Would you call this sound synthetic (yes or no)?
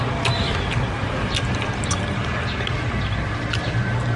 no